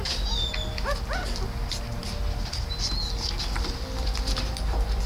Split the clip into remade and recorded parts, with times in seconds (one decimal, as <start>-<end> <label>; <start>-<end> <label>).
0.0-5.1 recorded